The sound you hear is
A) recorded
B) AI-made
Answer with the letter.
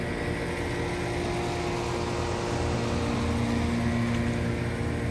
A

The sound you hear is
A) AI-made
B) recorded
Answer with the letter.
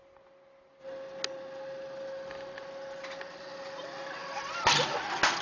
B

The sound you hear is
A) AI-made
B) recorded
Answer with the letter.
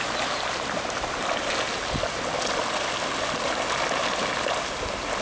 B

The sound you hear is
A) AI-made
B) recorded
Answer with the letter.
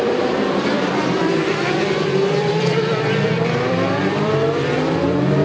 A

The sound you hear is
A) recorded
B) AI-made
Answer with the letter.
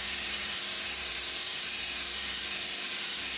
B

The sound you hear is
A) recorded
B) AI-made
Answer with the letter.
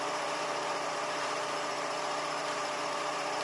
B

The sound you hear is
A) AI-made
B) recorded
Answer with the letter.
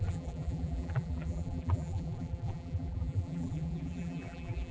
A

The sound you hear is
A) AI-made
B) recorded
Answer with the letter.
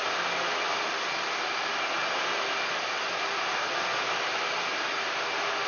B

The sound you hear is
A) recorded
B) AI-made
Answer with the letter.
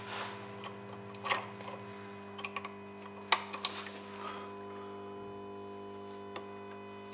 A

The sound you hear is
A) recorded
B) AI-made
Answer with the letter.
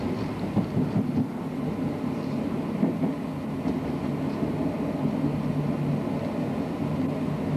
A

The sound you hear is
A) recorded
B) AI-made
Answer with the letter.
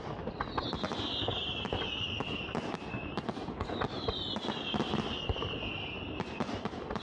B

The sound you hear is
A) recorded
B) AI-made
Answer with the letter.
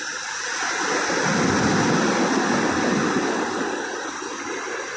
A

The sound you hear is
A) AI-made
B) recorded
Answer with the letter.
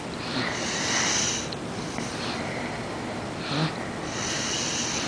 B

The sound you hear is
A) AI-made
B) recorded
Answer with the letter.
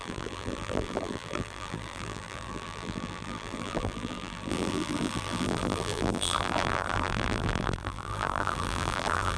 A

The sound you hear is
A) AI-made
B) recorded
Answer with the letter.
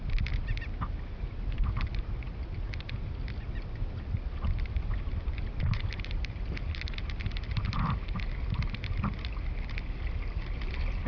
B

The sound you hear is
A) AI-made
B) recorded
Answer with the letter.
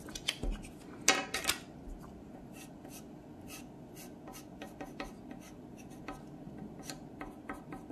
B